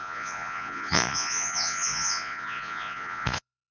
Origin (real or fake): fake